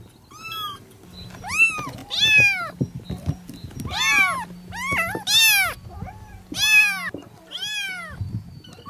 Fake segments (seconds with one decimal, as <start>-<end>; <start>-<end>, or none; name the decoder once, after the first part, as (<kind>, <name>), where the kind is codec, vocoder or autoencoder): none